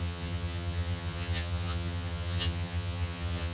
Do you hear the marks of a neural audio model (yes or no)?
yes